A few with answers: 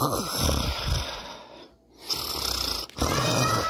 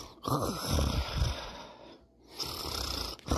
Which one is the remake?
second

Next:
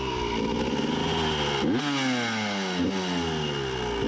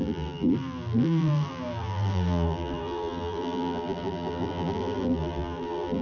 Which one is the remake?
second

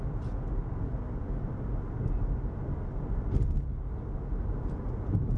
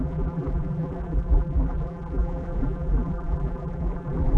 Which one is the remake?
second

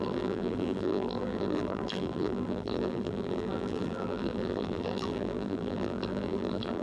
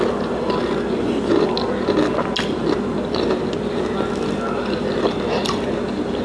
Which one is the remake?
first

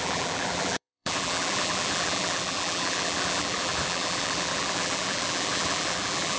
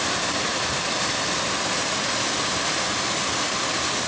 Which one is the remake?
first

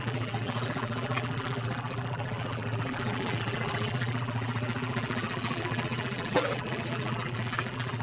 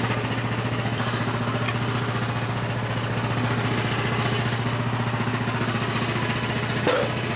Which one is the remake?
first